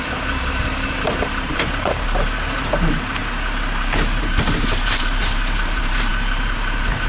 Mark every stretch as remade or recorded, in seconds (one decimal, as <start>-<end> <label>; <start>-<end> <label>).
0.0-3.2 remade; 3.2-4.2 recorded; 4.2-7.1 remade